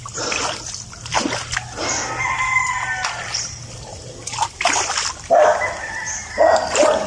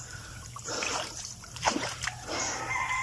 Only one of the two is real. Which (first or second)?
first